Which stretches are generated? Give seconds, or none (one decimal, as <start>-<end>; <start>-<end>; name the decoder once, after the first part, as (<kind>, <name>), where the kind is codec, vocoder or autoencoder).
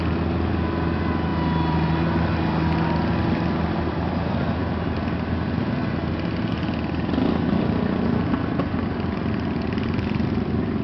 none